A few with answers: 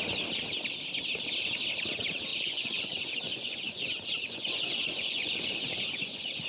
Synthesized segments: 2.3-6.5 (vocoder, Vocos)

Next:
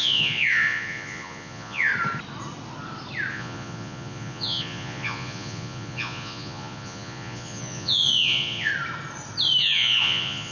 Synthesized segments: 0.0-1.9 (vocoder, Vocos); 3.3-8.7; 9.6-10.5

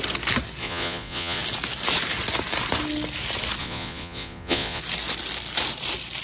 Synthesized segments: 0.6-1.4 (vocoder, Vocos); 3.6-4.8

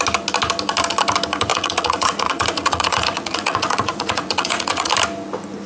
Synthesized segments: 1.5-4.9 (vocoder, Vocos)